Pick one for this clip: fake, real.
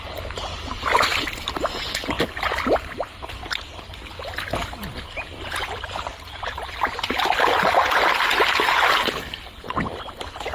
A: real